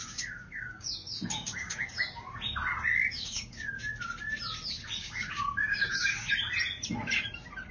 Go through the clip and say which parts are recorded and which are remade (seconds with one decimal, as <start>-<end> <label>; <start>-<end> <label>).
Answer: 0.0-2.2 remade; 2.2-2.9 recorded; 2.9-3.8 remade; 3.8-5.0 recorded; 5.0-6.3 remade; 6.3-7.7 recorded